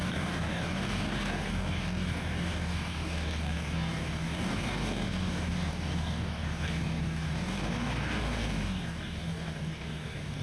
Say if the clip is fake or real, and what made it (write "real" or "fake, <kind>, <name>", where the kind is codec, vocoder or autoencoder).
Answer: fake, codec, DAC